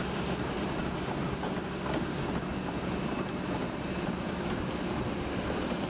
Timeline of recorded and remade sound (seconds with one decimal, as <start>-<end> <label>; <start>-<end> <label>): 0.0-2.5 recorded; 2.5-4.5 remade; 4.5-5.9 recorded